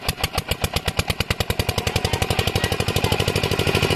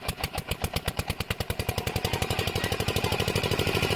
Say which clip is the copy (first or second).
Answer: second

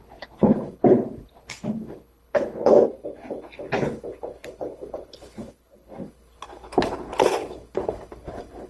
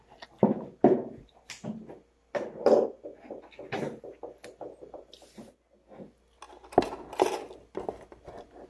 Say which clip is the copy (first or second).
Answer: first